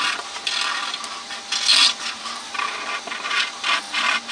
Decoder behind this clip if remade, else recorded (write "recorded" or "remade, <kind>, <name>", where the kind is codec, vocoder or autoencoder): recorded